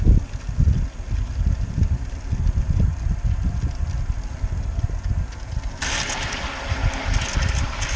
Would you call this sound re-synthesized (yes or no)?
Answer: no